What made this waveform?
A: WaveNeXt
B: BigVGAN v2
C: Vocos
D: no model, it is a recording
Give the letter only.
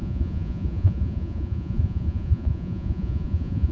C